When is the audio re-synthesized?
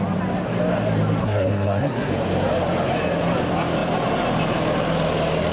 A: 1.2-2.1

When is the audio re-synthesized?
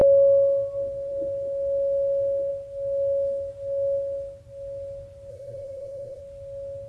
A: 5.3-6.2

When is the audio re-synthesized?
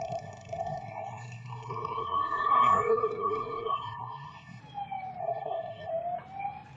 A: 0.0-4.6; 5.2-5.9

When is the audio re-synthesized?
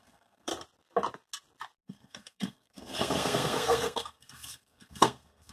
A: 0.0-0.5; 1.8-5.5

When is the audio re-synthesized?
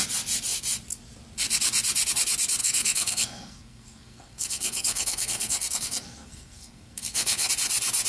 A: 2.6-7.5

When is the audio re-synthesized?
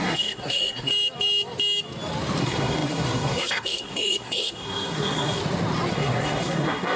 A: 0.0-0.9; 2.4-5.4; 5.9-7.0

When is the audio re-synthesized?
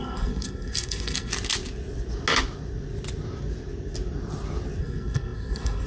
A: 0.0-1.3; 4.8-5.9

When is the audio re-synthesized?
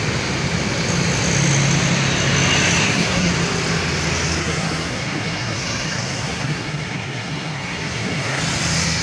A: 2.8-3.3; 4.4-8.4